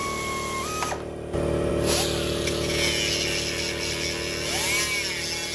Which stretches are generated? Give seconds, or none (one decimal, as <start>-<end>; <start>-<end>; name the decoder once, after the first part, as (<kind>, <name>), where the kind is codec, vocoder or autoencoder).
none